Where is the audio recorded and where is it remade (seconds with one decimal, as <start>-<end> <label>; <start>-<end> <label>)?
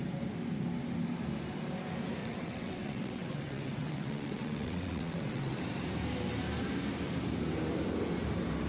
0.0-2.2 recorded; 2.2-5.6 remade; 5.6-8.7 recorded